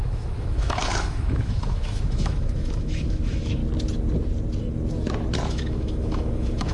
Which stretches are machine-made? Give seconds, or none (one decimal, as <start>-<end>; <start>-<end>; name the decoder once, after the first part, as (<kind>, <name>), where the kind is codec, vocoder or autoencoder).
0.0-3.6 (autoencoder, DAC-VAE); 5.5-6.7